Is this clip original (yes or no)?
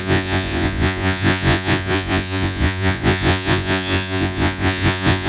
no